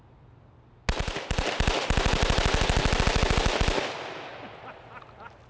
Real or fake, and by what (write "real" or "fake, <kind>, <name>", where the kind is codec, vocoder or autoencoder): real